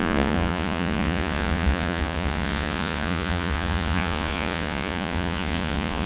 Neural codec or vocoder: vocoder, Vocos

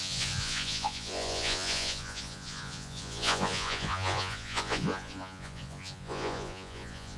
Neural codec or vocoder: vocoder, Vocos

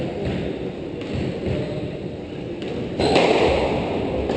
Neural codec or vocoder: none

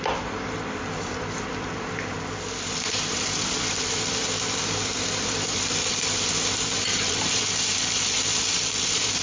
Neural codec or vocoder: vocoder, BigVGAN v2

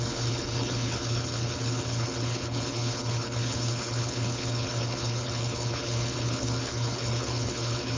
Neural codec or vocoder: codec, HILCodec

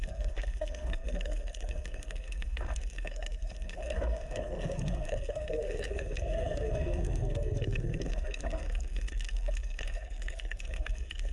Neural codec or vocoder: codec, SNAC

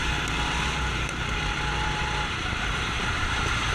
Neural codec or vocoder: vocoder, BigVGAN v2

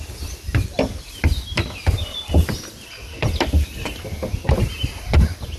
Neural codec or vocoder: none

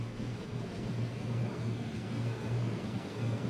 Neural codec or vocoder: codec, SNAC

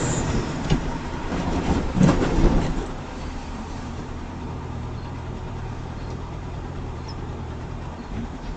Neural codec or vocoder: vocoder, BigVGAN v2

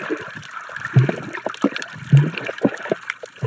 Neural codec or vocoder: none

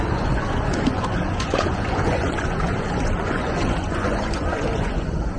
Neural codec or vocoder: vocoder, Vocos